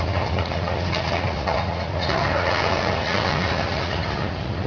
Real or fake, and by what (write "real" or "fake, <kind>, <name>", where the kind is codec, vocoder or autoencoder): fake, vocoder, Vocos